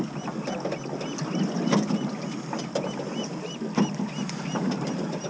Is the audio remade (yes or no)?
no